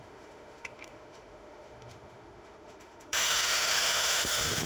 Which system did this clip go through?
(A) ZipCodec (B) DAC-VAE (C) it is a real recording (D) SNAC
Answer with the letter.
B